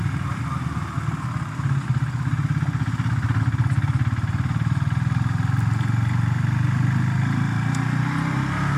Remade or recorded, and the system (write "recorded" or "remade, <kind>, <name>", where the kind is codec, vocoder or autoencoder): recorded